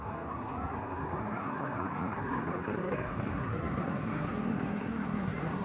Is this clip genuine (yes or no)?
no